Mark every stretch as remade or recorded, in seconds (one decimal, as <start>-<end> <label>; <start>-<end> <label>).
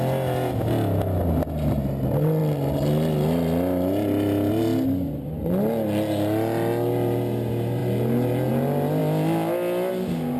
0.0-10.4 recorded